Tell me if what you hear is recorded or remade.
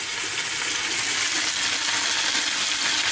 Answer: recorded